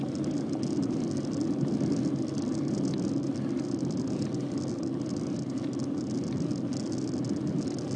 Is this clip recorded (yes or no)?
yes